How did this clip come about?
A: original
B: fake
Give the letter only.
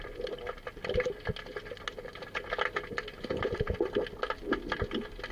A